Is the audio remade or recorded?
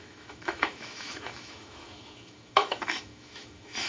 remade